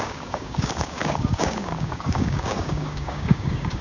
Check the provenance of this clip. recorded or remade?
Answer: remade